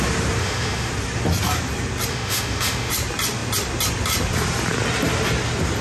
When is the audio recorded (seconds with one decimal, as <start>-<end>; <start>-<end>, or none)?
0.0-0.4; 0.9-2.1; 2.9-5.8